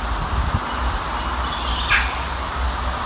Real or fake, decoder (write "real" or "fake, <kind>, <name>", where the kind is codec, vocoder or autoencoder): real